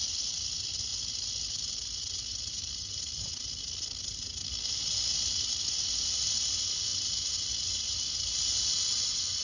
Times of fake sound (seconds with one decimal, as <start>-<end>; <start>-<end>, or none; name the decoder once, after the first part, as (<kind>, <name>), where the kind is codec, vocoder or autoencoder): none